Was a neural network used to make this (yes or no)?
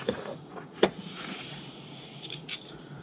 yes